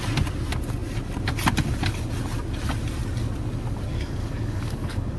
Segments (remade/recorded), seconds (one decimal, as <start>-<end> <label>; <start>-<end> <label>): 0.0-3.9 recorded; 3.9-5.2 remade